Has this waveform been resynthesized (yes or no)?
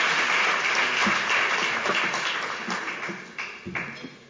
no